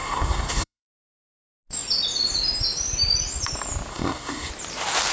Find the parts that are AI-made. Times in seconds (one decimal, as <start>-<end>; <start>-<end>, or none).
0.0-0.9; 3.9-4.5

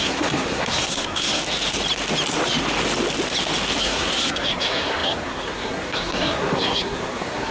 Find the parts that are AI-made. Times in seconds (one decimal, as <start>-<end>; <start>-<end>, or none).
0.0-1.4; 3.8-7.5

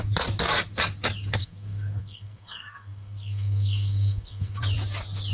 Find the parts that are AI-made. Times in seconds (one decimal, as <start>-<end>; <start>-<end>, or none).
1.4-4.6

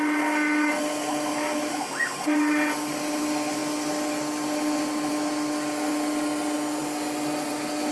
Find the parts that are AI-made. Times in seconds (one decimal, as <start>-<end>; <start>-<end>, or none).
none

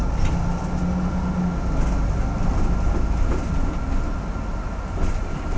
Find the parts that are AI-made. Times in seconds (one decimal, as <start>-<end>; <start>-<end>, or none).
none

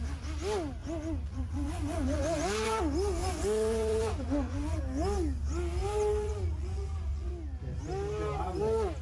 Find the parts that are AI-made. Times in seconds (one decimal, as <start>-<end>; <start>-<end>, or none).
0.8-2.8; 3.2-4.8; 5.8-7.3

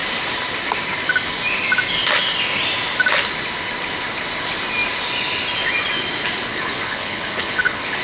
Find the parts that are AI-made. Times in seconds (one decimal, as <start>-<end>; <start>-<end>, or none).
6.5-8.0

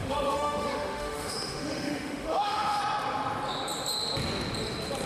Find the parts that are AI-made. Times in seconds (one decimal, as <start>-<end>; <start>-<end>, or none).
0.0-2.8